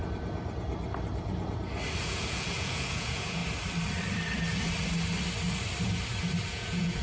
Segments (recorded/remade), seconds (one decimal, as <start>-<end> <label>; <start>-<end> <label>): 0.0-2.0 recorded; 2.0-3.4 remade; 3.4-6.5 recorded; 6.5-7.0 remade

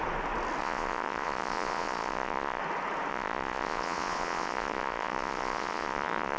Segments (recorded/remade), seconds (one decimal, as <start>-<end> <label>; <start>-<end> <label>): 0.0-0.6 recorded; 0.6-2.6 remade; 2.6-3.1 recorded; 3.1-6.4 remade

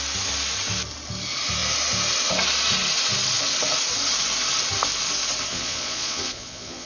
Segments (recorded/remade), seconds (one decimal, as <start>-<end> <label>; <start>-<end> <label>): 0.0-5.5 recorded; 5.5-6.9 remade